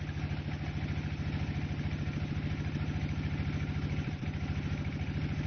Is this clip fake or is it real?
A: real